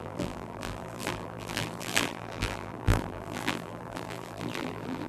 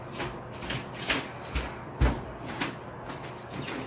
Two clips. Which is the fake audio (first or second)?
first